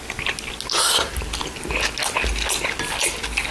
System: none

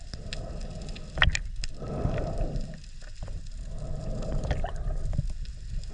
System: vocoder, BigVGAN v2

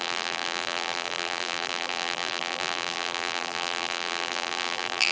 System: vocoder, BigVGAN v2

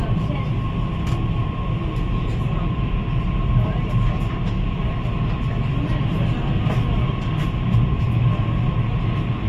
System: none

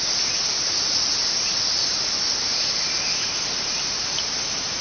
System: vocoder, BigVGAN v2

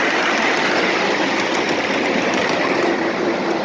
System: vocoder, BigVGAN v2